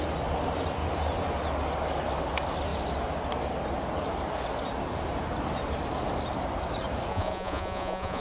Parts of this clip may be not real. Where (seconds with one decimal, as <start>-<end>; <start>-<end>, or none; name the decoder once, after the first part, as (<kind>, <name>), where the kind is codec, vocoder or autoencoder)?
7.1-8.2 (vocoder, Vocos)